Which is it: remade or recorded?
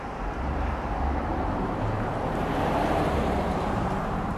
remade